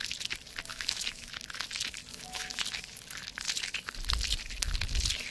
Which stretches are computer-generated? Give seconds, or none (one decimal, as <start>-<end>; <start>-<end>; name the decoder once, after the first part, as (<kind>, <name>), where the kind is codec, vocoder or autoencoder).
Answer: 0.7-1.3 (autoencoder, DAC-VAE); 2.1-2.6